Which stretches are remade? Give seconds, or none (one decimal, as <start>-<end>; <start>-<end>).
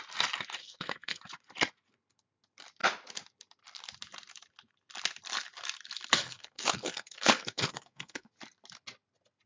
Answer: 0.6-1.2; 6.1-8.3